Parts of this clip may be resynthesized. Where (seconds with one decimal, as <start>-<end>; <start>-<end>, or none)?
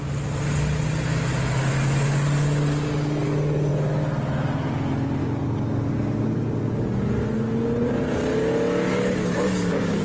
8.9-10.0